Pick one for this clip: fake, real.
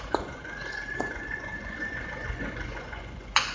fake